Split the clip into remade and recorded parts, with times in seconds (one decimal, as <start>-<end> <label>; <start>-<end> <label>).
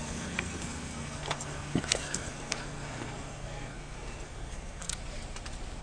0.0-4.9 remade; 4.9-5.8 recorded